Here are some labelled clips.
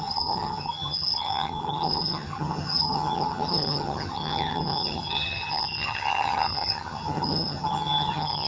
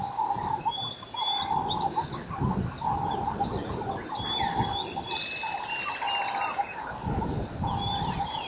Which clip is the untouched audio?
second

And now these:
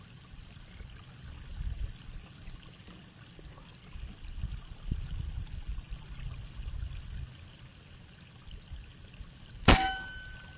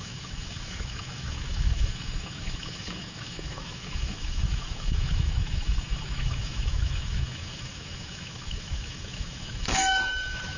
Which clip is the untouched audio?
first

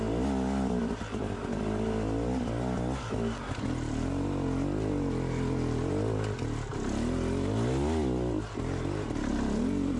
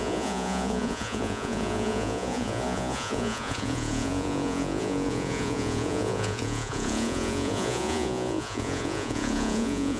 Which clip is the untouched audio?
first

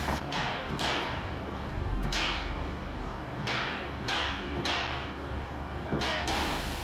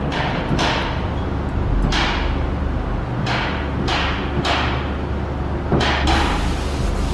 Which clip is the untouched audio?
second